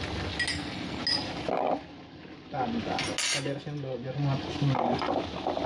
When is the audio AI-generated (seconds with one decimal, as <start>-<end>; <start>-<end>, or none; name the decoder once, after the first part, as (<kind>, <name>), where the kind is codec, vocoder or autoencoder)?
0.5-1.0 (codec, SNAC)